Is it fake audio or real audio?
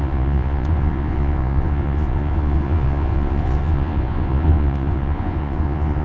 fake